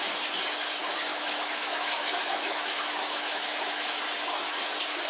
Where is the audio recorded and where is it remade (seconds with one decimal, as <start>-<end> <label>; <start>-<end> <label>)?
0.0-1.1 recorded; 1.1-4.0 remade; 4.0-5.1 recorded